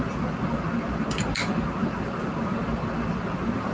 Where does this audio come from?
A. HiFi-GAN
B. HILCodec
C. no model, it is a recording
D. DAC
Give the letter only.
C